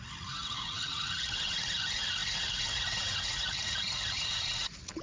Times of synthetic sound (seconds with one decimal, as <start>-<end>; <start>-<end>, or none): 0.0-5.0